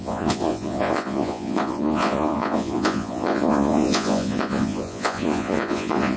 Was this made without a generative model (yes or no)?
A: no